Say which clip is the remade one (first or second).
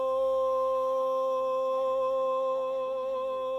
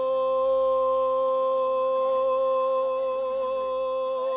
first